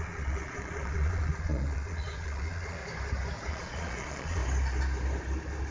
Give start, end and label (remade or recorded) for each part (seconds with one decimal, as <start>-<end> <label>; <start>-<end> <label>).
0.0-2.8 remade; 2.8-3.5 recorded; 3.5-4.4 remade; 4.4-5.7 recorded